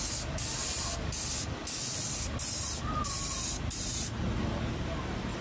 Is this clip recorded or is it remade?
recorded